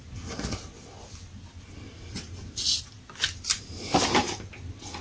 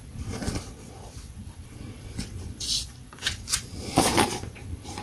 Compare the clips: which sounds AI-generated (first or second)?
second